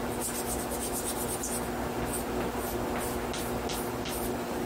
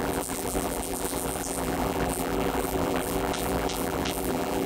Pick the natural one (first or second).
first